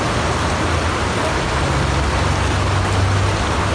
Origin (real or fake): real